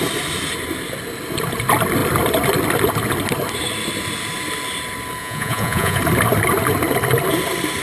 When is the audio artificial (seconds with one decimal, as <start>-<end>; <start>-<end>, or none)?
5.2-6.0